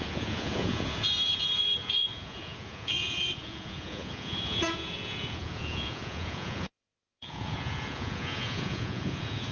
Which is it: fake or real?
fake